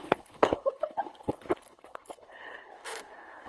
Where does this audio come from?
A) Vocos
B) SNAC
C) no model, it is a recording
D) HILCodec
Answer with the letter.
D